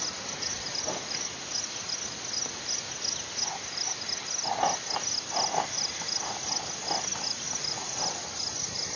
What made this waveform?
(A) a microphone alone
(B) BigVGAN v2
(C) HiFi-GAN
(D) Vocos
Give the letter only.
A